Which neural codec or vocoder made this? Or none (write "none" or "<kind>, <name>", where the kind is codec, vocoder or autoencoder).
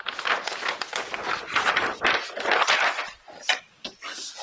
none